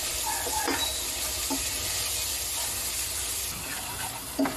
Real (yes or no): yes